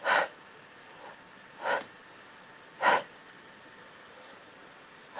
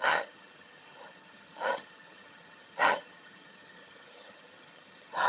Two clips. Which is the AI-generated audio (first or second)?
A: second